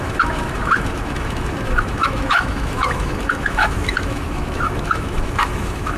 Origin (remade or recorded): remade